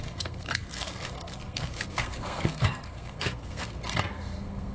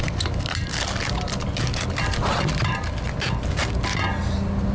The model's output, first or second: first